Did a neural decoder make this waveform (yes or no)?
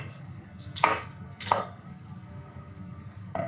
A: yes